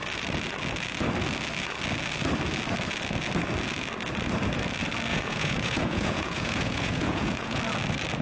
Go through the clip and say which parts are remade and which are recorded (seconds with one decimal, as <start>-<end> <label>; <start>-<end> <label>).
0.0-5.1 recorded; 5.1-7.6 remade; 7.6-8.2 recorded